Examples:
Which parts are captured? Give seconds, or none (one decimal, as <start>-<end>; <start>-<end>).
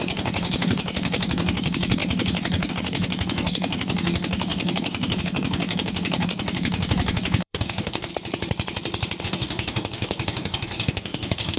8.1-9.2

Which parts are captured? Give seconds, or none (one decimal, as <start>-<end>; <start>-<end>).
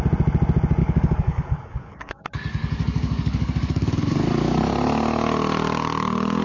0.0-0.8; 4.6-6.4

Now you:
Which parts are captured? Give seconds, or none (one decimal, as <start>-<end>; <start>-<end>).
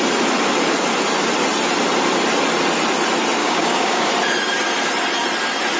0.0-3.4; 4.1-5.8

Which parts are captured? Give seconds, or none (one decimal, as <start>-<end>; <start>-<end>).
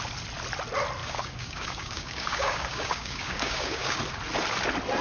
0.0-1.0; 4.0-5.0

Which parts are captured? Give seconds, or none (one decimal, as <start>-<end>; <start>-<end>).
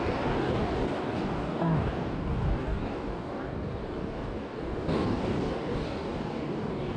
none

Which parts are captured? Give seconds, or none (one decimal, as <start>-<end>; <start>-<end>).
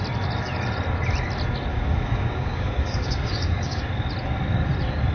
0.0-1.7; 3.8-5.1